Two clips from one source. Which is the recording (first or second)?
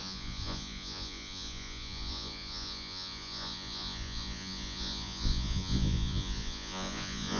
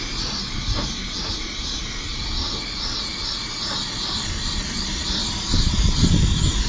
second